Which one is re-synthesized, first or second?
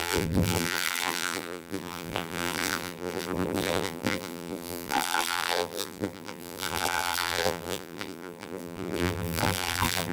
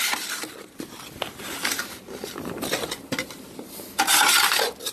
first